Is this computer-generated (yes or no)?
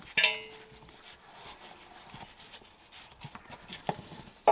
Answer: no